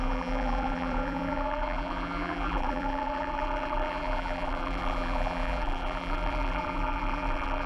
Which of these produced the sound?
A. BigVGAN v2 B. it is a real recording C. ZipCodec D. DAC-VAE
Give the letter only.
A